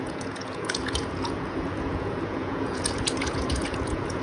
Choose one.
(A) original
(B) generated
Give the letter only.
B